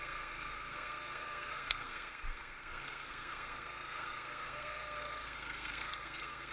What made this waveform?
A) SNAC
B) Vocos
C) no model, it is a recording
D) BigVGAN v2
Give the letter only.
A